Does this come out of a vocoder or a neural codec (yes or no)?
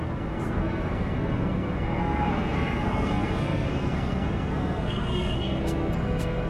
yes